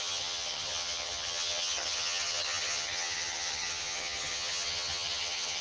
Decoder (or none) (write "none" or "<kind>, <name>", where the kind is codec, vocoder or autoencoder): vocoder, HiFi-GAN